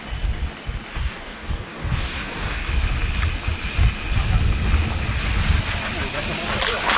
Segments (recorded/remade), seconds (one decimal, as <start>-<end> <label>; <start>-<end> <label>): 0.0-0.9 recorded; 0.9-2.7 remade; 2.7-7.0 recorded